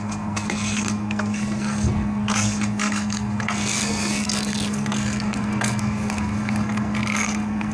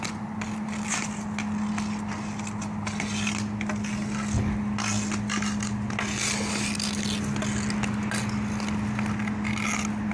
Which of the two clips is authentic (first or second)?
second